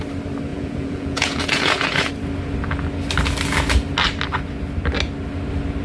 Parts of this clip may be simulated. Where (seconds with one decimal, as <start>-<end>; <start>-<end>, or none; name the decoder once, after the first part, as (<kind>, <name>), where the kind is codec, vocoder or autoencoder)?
0.5-2.1 (vocoder, Vocos)